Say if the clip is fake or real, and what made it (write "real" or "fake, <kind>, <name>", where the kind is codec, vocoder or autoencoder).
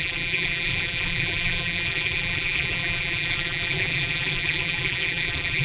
fake, vocoder, BigVGAN v2